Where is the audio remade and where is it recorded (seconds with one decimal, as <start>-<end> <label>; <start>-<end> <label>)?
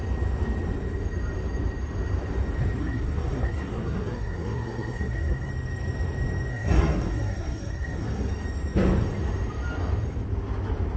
0.0-2.8 recorded; 2.8-5.5 remade; 5.5-6.5 recorded; 6.5-8.3 remade; 8.3-11.0 recorded